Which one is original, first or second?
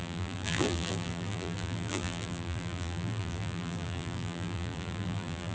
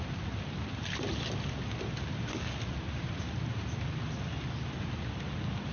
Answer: second